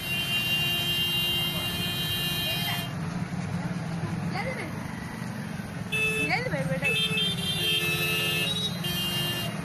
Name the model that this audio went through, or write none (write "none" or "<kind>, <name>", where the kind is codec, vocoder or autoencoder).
none